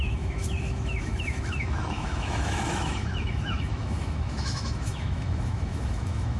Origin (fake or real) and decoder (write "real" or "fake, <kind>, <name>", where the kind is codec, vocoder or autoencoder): fake, autoencoder, DAC-VAE